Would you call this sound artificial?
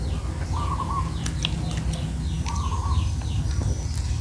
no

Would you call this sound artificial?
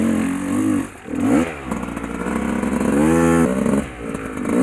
no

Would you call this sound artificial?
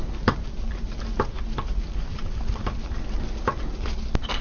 no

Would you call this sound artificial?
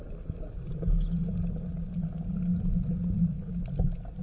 no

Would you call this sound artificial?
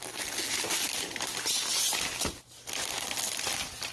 no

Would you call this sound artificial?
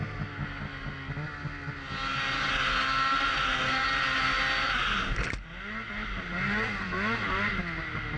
no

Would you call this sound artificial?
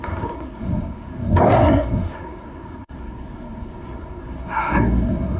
yes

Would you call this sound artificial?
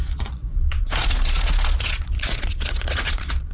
yes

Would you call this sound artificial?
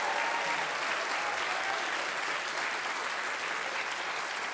no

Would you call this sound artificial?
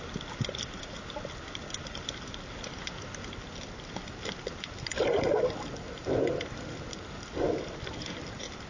no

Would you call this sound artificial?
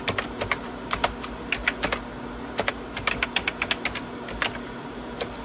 no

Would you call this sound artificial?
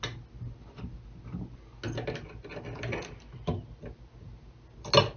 no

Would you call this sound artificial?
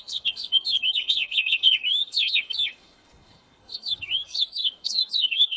yes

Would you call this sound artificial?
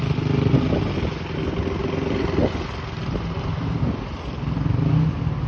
no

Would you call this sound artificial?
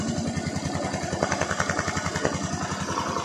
no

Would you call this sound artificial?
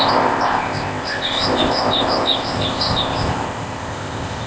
yes